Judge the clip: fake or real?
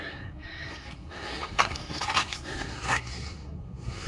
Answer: fake